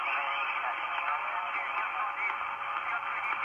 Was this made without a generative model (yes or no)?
yes